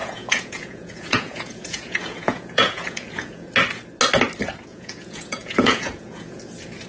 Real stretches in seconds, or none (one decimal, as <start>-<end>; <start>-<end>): 3.5-4.7; 6.4-6.9